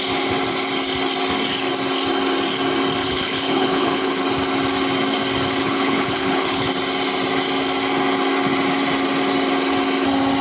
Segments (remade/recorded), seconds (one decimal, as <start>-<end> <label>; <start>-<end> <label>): 0.0-3.0 recorded; 3.0-4.2 remade; 4.2-5.6 recorded; 5.6-6.7 remade; 6.7-10.4 recorded